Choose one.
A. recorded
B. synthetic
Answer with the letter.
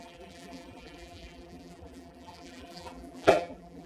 B